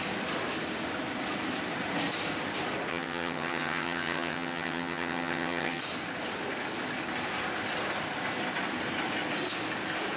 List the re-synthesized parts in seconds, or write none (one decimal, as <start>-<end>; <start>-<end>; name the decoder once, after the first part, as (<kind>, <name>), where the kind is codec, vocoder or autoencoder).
2.9-5.8 (vocoder, HiFi-GAN)